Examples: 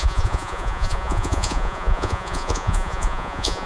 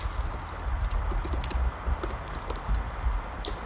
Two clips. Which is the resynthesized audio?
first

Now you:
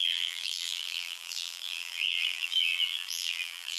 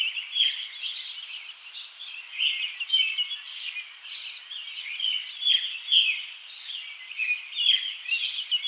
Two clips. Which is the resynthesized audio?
first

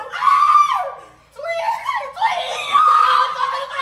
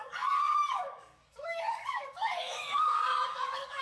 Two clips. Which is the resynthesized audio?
second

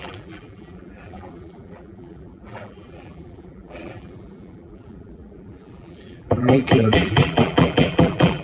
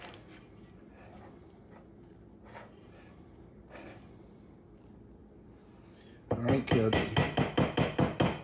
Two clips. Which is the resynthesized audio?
first